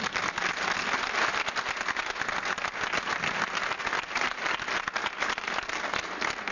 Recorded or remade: recorded